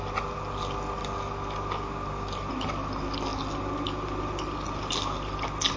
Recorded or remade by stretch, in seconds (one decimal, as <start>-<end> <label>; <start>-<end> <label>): 0.0-5.8 recorded